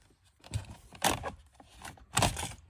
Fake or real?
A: fake